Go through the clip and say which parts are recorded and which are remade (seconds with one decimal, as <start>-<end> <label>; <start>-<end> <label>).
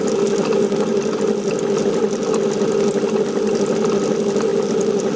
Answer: 0.0-5.2 recorded